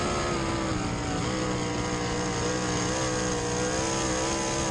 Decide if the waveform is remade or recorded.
recorded